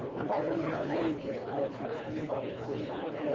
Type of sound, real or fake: fake